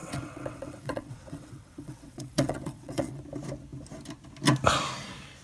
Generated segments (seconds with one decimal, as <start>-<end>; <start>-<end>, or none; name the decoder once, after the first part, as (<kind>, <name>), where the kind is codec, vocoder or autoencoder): 0.0-3.2 (vocoder, WaveNeXt)